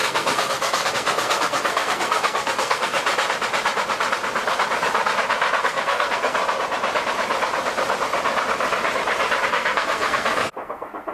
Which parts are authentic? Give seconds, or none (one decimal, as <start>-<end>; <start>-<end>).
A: 3.0-5.6; 6.4-9.5